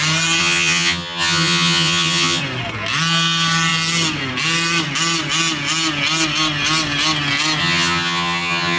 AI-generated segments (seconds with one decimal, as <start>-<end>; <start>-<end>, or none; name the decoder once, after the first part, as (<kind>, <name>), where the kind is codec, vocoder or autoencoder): 0.4-2.4 (vocoder, HiFi-GAN); 7.6-8.8